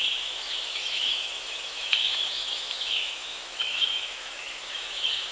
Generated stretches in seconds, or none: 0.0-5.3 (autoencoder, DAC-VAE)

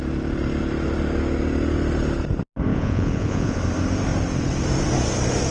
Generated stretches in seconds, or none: 2.7-3.6 (vocoder, Vocos)

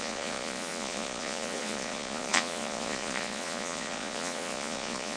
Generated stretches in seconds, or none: 0.0-5.2 (vocoder, Vocos)

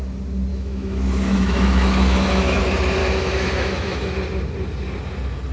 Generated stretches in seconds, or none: 0.5-2.6 (autoencoder, DAC-VAE); 3.0-4.1

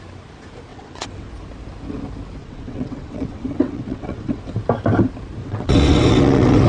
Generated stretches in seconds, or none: 0.7-1.3 (vocoder, WaveNeXt); 2.4-4.4; 5.4-6.7

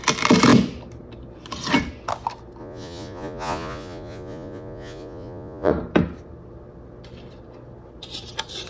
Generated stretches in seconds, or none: 2.6-5.7 (vocoder, Vocos)

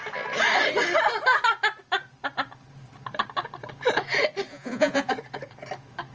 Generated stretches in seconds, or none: 4.5-5.1 (vocoder, Vocos)